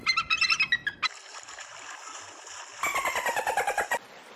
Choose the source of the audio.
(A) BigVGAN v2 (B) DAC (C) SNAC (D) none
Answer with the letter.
D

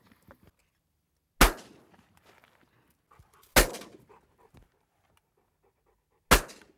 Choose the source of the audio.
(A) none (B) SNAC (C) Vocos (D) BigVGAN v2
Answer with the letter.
A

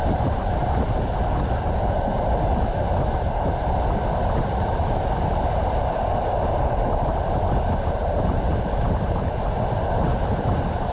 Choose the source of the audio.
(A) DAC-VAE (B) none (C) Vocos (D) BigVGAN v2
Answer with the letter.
D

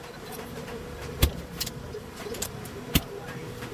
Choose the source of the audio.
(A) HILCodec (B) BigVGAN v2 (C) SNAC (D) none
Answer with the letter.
B